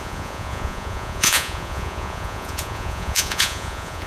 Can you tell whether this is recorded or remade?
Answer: remade